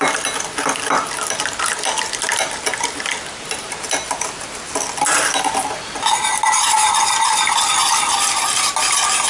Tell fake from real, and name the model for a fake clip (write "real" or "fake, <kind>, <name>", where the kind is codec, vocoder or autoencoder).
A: real